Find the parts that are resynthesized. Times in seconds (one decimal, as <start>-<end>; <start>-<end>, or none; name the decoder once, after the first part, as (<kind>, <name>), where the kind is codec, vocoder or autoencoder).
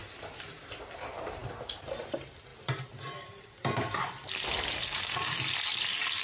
0.5-6.2 (vocoder, BigVGAN v2)